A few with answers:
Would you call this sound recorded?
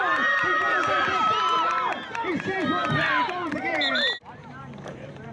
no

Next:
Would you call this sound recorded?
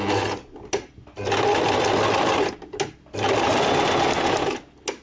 yes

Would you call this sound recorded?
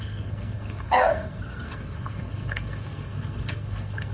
no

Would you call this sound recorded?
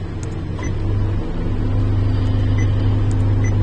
yes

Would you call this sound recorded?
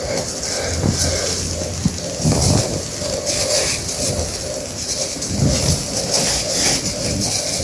yes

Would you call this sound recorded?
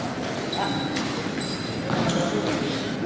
yes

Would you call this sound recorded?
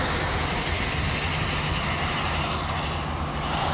yes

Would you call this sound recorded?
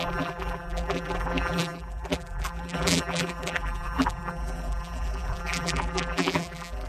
no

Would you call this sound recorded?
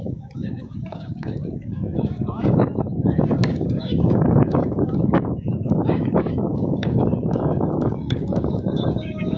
no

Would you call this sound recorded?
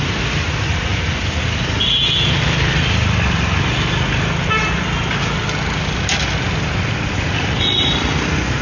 yes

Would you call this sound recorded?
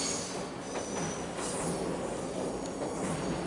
yes